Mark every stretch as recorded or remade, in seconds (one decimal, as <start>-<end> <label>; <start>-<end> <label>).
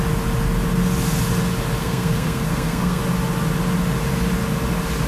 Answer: 0.0-1.8 recorded; 1.8-3.0 remade; 3.0-5.1 recorded